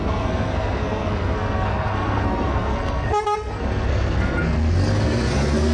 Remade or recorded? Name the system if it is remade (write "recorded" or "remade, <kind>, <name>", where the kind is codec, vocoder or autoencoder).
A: remade, codec, SNAC